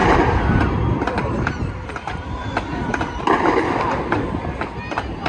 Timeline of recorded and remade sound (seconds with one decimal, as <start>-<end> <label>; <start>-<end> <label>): 0.0-3.2 remade; 3.2-5.3 recorded